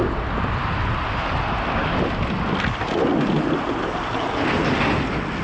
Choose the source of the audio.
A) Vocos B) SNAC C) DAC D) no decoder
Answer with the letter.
D